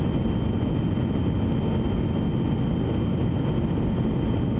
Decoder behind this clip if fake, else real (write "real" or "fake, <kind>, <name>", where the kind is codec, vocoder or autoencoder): real